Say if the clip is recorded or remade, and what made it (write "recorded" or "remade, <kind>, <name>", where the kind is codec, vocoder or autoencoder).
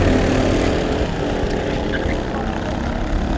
recorded